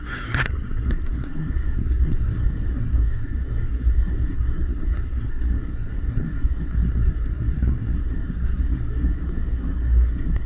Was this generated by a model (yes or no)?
yes